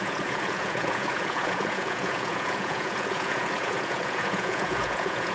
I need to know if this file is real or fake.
fake